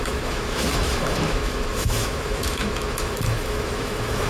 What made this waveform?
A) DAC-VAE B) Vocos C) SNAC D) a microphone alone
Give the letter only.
A